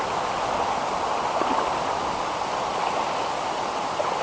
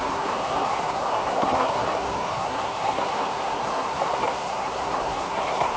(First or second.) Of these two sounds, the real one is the first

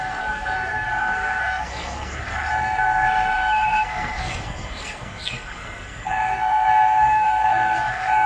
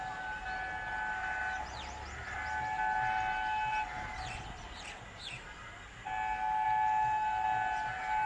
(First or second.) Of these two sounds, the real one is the second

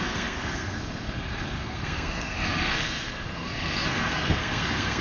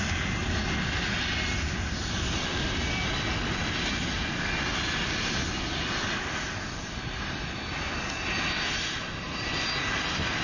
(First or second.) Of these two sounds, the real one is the second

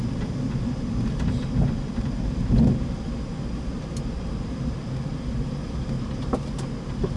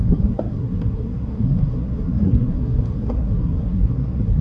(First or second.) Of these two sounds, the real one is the first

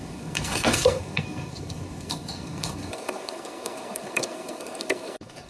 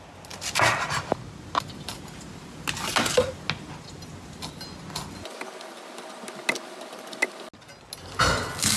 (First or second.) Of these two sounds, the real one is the second